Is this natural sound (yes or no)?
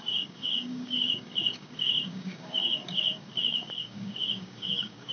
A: no